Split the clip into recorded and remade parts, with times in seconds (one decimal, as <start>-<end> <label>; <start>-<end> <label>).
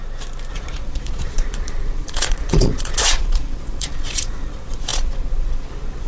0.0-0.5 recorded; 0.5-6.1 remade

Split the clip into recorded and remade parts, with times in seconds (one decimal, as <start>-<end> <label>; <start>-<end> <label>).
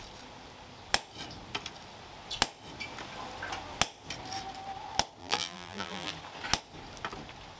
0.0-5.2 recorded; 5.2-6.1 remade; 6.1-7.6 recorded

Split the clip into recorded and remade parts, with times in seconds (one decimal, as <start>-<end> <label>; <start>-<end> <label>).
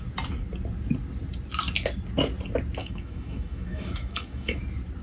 0.0-2.8 recorded; 2.8-4.6 remade; 4.6-5.0 recorded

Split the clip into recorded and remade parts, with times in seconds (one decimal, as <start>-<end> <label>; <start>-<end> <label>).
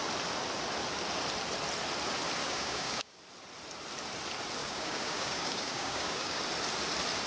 0.0-2.4 recorded; 2.4-3.2 remade; 3.2-4.6 recorded; 4.6-6.4 remade; 6.4-7.3 recorded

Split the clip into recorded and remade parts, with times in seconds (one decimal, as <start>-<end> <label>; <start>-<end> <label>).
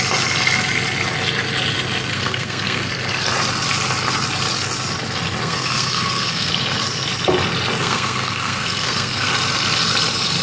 0.0-2.1 recorded; 2.1-2.9 remade; 2.9-5.4 recorded; 5.4-6.5 remade; 6.5-7.8 recorded; 7.8-9.3 remade; 9.3-10.4 recorded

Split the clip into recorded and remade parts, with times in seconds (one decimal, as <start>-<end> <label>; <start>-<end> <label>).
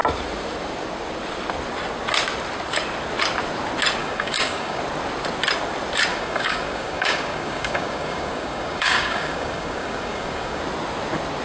0.0-4.0 recorded; 4.0-4.8 remade; 4.8-6.1 recorded; 6.1-10.6 remade; 10.6-11.4 recorded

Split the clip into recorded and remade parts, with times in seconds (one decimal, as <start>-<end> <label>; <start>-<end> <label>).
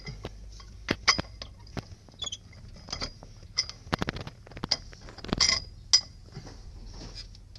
0.0-7.6 recorded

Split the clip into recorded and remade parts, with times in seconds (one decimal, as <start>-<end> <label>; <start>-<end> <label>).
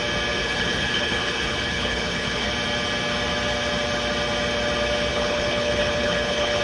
0.0-0.4 recorded; 0.4-2.5 remade; 2.5-5.1 recorded; 5.1-6.6 remade